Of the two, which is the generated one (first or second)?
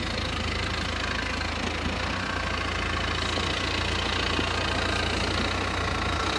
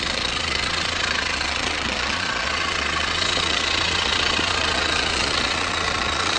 second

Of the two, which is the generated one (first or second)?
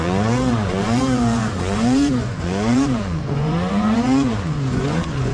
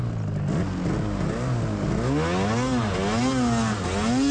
first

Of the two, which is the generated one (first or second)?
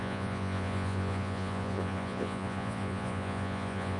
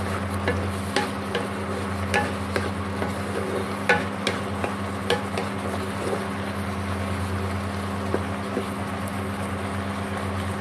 first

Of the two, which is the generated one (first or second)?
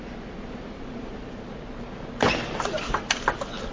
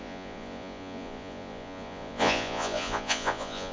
second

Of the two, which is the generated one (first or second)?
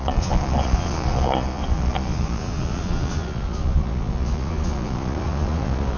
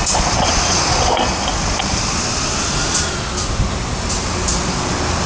first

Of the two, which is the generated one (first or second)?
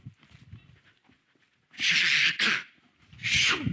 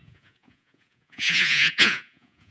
second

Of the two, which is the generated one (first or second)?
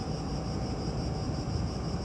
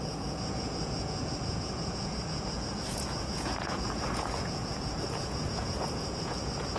second